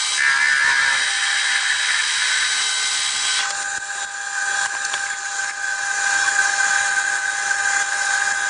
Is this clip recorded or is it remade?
recorded